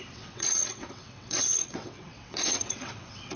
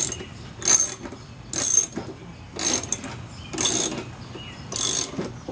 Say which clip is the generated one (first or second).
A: first